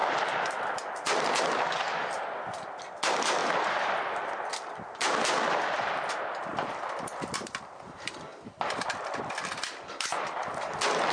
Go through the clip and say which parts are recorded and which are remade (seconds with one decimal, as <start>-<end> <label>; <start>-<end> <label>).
0.0-1.4 remade; 1.4-3.4 recorded; 3.4-4.7 remade; 4.7-6.5 recorded; 6.5-10.1 remade; 10.1-11.1 recorded